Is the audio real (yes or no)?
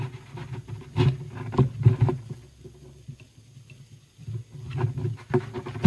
yes